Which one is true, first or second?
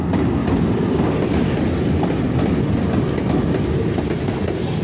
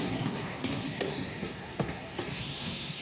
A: first